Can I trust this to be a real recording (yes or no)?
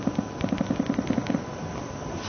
yes